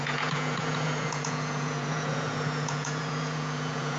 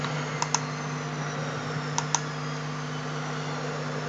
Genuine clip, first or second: second